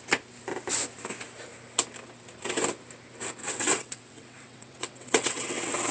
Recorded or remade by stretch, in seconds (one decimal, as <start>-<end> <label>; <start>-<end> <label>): 0.0-3.4 recorded; 3.4-5.9 remade